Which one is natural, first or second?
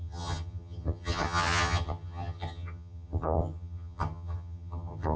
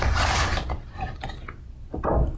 second